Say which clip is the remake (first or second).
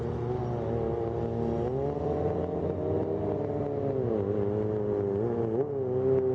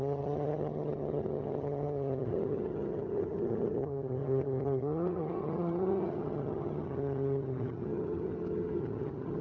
second